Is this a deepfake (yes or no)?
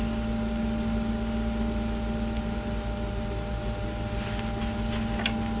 no